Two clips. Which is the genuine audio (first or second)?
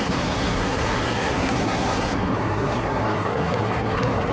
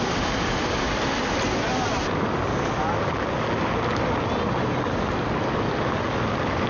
second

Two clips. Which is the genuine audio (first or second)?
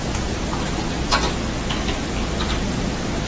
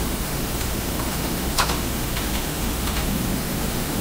first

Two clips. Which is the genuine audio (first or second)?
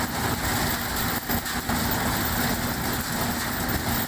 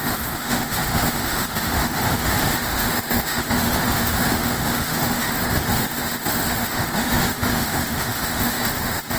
first